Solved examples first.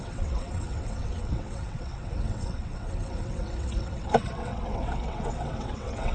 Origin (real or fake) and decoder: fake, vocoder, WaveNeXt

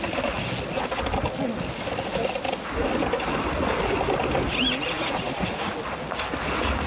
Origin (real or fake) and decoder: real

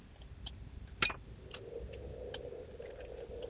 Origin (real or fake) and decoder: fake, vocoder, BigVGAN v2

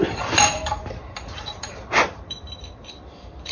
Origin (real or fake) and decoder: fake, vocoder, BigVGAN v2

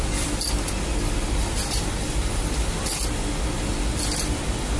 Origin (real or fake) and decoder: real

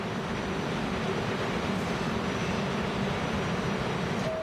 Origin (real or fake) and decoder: real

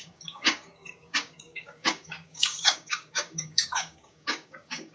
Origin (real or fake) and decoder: fake, codec, DAC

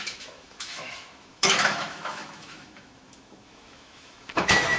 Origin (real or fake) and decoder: fake, autoencoder, DAC-VAE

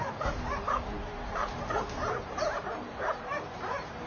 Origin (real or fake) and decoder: fake, vocoder, BigVGAN v2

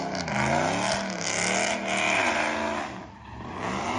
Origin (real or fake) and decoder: real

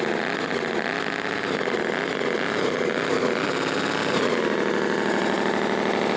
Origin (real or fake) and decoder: real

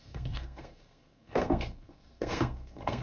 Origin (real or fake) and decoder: fake, codec, SNAC